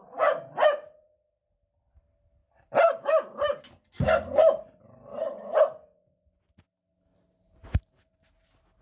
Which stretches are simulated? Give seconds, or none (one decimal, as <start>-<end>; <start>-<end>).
2.4-3.6; 5.1-5.6